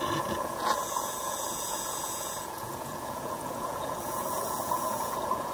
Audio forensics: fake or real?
fake